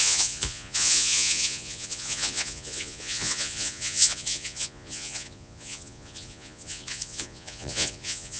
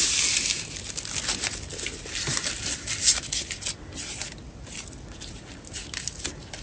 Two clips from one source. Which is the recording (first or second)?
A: second